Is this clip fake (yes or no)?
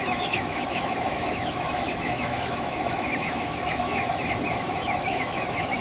yes